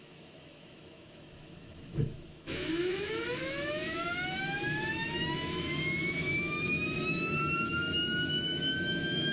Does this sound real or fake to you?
fake